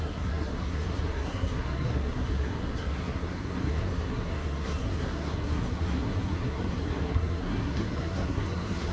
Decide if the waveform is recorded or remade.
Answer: remade